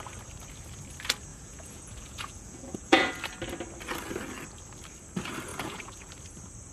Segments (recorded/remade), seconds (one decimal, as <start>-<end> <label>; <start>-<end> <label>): 0.0-1.3 recorded; 1.3-3.1 remade; 3.1-5.5 recorded; 5.5-6.1 remade; 6.1-6.7 recorded